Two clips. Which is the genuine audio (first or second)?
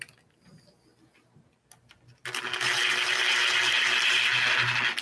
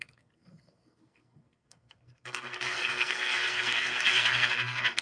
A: first